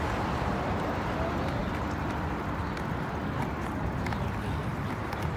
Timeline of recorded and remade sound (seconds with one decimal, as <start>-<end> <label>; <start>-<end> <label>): 0.0-5.4 recorded